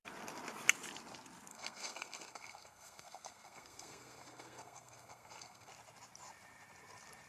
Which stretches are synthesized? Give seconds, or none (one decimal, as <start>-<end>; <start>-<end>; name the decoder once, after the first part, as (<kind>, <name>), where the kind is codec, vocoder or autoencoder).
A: 1.5-5.7 (codec, SNAC)